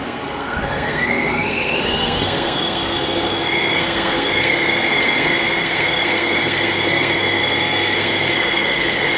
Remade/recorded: remade